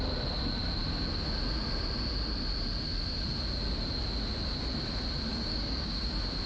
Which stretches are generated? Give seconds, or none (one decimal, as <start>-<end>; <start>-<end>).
5.3-6.1

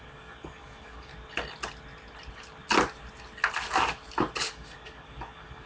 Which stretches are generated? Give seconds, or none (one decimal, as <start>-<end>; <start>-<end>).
0.0-1.1; 4.5-5.7

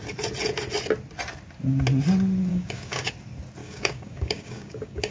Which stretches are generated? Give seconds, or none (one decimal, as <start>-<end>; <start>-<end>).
2.5-3.1; 3.6-5.1

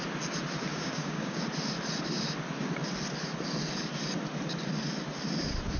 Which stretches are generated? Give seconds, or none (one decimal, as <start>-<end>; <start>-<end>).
0.7-1.4

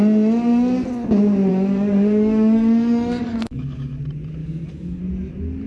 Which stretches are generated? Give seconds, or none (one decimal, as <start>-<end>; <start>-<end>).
1.5-4.0; 4.4-5.0